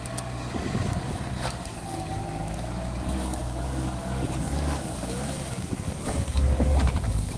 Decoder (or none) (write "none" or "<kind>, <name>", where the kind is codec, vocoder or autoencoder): codec, DAC